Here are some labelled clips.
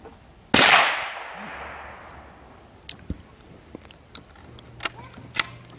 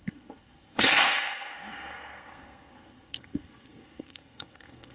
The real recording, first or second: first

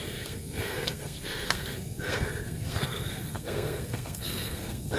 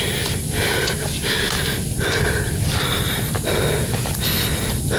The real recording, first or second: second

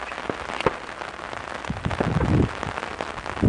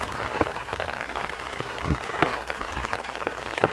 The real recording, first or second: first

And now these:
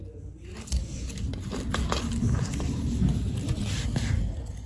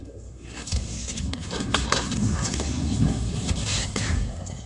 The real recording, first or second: first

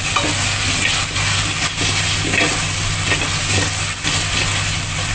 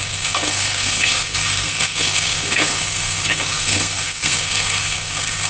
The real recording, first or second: first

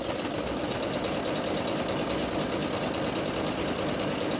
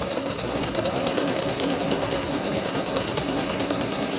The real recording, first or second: first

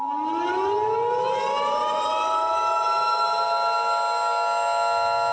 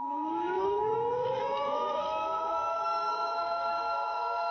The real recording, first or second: first